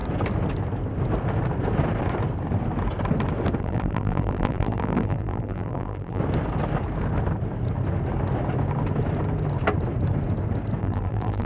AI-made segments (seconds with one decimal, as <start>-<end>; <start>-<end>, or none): 3.6-6.2; 10.8-11.5